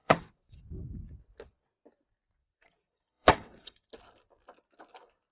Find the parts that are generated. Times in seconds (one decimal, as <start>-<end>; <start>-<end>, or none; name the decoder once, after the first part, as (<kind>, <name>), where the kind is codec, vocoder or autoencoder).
0.0-0.6 (vocoder, WaveNeXt); 2.4-3.9